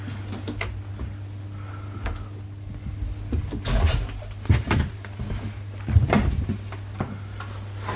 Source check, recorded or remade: recorded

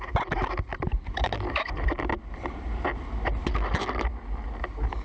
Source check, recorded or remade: recorded